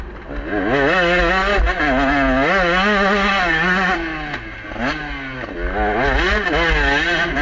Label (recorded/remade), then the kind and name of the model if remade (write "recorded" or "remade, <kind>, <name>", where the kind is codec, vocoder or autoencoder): recorded